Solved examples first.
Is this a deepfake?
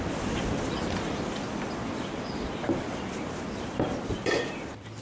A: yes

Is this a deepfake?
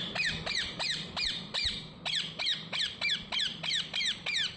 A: yes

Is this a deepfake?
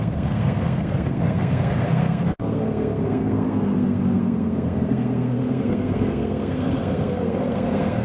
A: yes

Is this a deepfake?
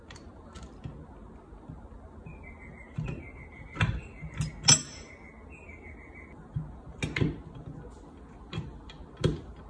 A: no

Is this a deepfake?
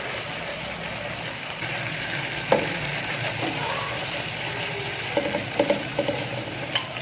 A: yes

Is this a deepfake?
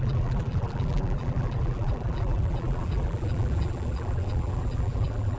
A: yes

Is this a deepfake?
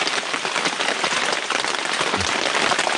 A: no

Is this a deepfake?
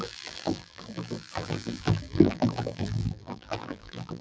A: yes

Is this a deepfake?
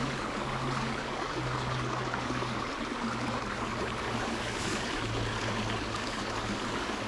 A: yes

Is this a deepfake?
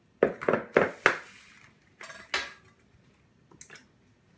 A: no